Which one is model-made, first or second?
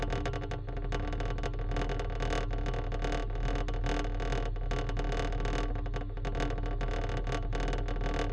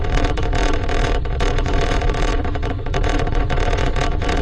second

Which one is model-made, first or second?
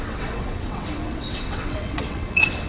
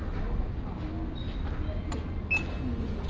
first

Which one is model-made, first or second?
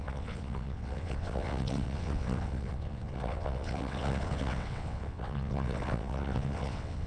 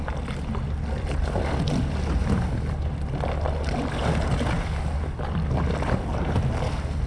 first